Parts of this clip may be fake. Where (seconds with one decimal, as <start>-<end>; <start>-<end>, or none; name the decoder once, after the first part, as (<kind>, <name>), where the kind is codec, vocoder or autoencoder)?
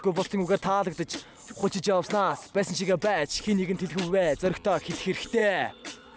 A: 5.4-6.2 (vocoder, Vocos)